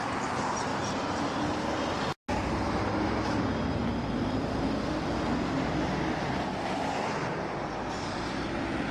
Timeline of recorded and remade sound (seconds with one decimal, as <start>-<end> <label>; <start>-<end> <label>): 0.0-0.7 recorded; 0.7-1.4 remade; 1.4-3.8 recorded; 3.8-8.5 remade; 8.5-8.9 recorded